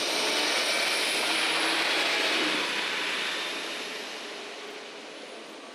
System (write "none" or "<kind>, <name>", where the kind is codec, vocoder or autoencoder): none